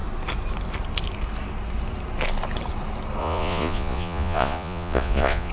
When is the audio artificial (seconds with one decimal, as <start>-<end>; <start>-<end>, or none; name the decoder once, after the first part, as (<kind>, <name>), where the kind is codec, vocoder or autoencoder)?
3.2-5.5 (vocoder, Vocos)